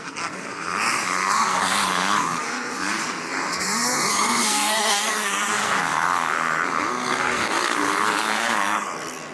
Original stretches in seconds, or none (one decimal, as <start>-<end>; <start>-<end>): none